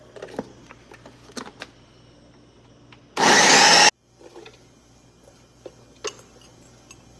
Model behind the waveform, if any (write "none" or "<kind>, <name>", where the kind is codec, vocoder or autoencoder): none